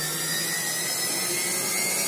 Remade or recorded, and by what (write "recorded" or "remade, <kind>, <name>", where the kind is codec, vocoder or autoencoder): recorded